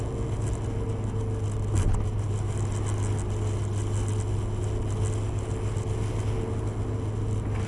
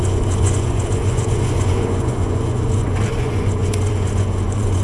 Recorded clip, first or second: first